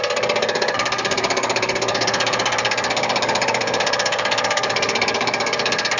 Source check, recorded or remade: remade